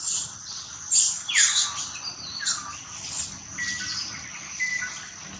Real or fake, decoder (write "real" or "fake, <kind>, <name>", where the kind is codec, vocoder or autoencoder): real